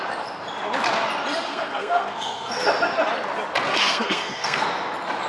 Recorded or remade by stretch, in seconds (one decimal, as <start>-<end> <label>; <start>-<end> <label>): 0.0-1.5 recorded; 1.5-2.6 remade; 2.6-3.7 recorded; 3.7-4.6 remade; 4.6-5.3 recorded